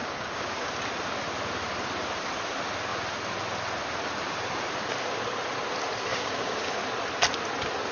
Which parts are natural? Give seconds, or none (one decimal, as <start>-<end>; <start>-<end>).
0.7-6.1; 6.8-7.9